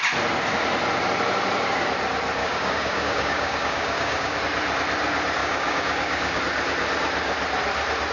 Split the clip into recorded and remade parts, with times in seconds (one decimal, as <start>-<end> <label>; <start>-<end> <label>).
0.0-2.4 recorded; 2.4-4.4 remade; 4.4-5.4 recorded; 5.4-6.4 remade; 6.4-8.1 recorded